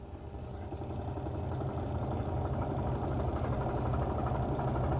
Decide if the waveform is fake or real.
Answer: real